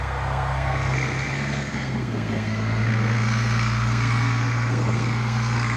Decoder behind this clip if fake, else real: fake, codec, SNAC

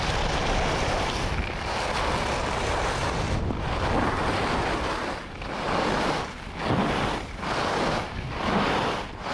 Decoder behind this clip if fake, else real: real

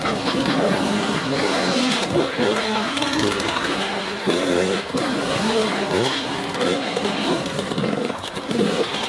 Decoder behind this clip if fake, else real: fake, codec, SNAC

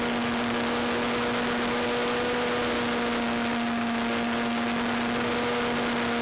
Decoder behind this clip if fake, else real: real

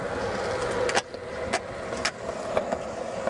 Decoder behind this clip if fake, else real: real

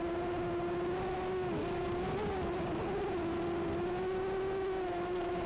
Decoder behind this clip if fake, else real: real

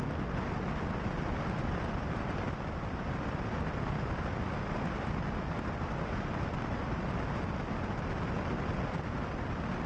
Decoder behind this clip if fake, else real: real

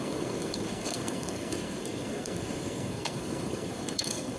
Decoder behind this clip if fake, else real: fake, codec, SNAC